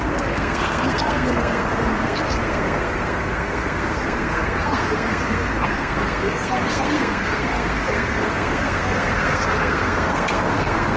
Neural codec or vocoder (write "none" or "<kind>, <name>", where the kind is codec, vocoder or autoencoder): codec, SNAC